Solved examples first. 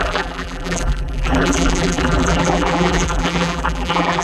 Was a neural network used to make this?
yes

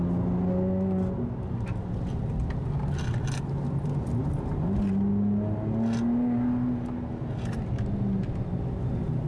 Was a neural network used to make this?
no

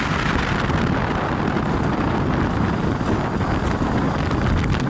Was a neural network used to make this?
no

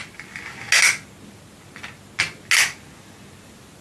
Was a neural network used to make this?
no